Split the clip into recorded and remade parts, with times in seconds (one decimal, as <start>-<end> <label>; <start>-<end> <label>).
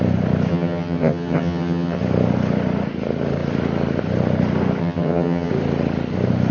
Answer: 0.0-0.5 recorded; 0.5-2.0 remade; 2.0-4.8 recorded; 4.8-5.5 remade; 5.5-6.5 recorded